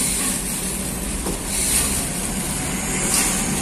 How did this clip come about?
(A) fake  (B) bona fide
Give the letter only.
B